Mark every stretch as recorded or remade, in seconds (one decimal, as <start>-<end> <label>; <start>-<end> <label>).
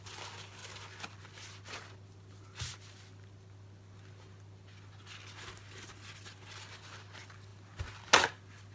0.0-7.5 recorded; 7.5-8.1 remade; 8.1-8.7 recorded